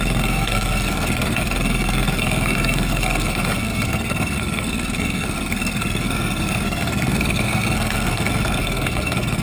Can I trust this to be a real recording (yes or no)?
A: no